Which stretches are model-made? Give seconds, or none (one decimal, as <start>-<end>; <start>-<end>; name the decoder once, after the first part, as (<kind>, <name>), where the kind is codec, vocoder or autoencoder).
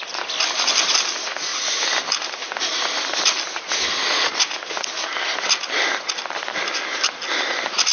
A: none